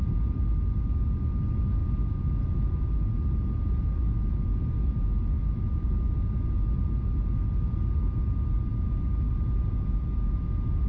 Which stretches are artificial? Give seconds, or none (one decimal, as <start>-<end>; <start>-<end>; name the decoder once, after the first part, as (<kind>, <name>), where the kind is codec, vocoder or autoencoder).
5.4-5.9 (vocoder, BigVGAN v2)